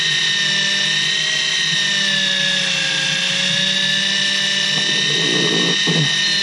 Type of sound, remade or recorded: recorded